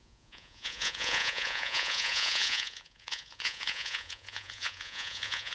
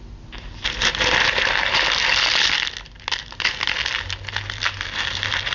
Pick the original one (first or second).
second